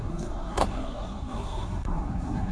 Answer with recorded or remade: remade